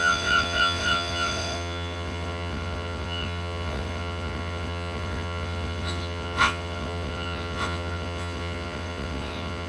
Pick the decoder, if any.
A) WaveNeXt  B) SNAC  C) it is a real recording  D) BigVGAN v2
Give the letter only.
A